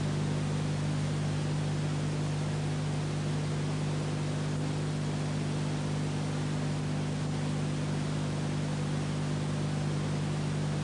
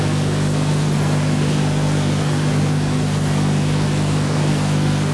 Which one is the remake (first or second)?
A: second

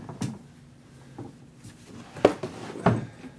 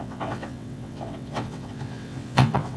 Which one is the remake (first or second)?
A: second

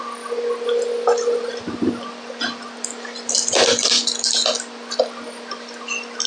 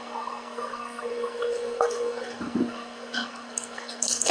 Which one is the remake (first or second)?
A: second